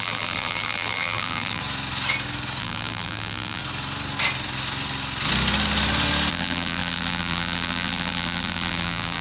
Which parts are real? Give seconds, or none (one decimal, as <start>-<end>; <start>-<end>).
1.6-2.6; 3.6-6.3